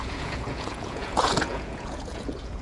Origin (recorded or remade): remade